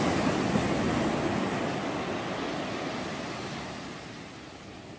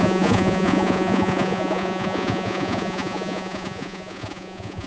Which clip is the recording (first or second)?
first